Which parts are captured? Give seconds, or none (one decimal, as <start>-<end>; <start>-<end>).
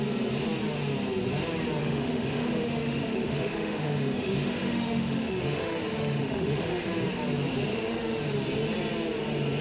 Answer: 0.0-1.8; 6.9-7.7; 8.2-9.6